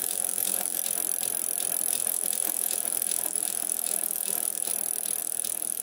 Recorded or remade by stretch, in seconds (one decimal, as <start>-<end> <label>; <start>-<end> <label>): 0.0-0.8 remade; 0.8-1.9 recorded; 1.9-4.7 remade; 4.7-5.2 recorded; 5.2-5.8 remade